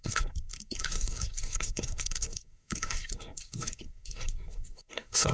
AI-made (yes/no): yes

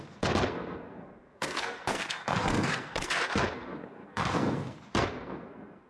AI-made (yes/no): yes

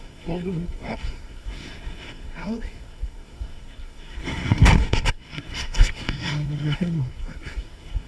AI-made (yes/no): yes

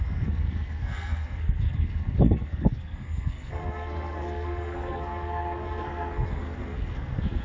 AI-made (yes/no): yes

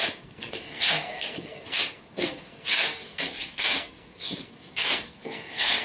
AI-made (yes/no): yes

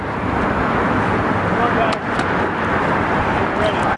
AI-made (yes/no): no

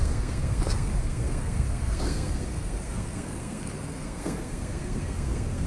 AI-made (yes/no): yes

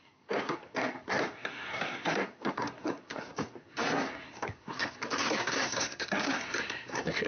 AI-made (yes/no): yes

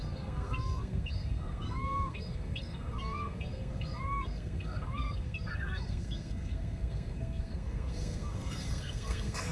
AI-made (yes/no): yes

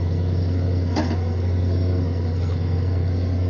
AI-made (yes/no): yes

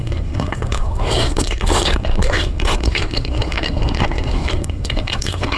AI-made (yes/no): yes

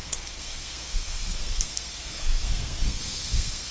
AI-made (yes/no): yes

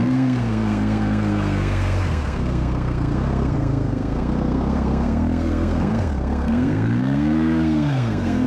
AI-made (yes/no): yes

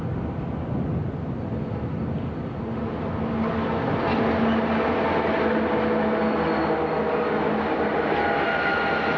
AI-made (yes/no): no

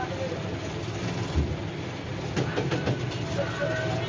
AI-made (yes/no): no